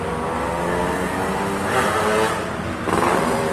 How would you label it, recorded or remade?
recorded